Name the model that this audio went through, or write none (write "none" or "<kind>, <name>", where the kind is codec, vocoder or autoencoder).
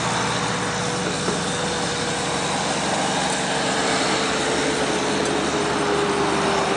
none